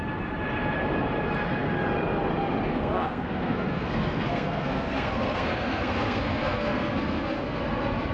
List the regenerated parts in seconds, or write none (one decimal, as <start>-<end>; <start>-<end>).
2.7-7.6

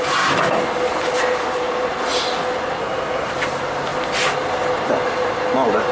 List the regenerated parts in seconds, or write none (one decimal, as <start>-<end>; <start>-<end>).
2.8-3.3